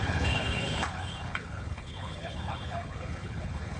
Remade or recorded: remade